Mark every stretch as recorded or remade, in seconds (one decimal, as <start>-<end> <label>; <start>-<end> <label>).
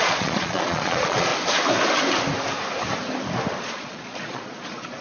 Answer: 0.0-1.3 remade; 1.3-3.6 recorded; 3.6-5.0 remade